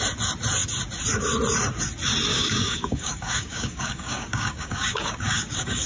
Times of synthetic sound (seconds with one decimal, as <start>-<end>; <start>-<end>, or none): 2.3-5.9